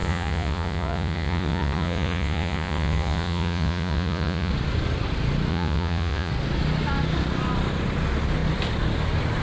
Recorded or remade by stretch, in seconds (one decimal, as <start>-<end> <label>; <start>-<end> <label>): 0.0-4.5 remade; 4.5-5.5 recorded; 5.5-6.3 remade; 6.3-9.4 recorded